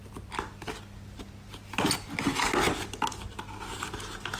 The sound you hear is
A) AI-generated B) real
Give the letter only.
B